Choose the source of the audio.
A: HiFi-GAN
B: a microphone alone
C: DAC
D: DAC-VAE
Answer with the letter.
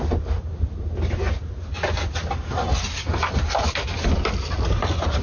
B